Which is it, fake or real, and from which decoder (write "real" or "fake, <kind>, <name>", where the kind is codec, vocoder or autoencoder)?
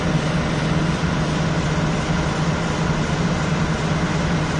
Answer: real